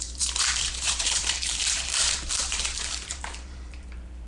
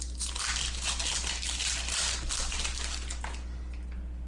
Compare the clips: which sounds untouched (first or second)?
second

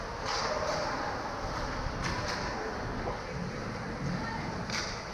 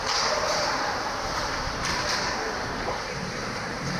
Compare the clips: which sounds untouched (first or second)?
first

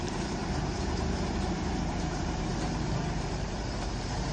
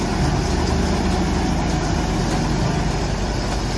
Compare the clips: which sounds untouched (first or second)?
second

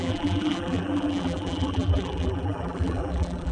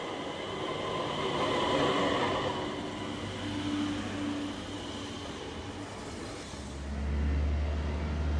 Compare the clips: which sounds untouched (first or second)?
second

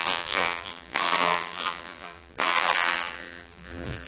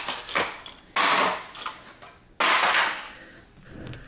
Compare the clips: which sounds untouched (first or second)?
second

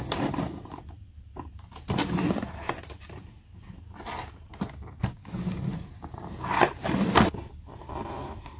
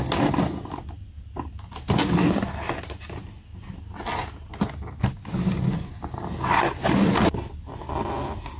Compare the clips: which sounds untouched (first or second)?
second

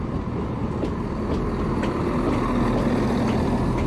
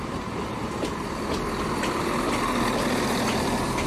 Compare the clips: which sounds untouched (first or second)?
first